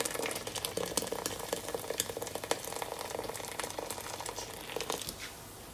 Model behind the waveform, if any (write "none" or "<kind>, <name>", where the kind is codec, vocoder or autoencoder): none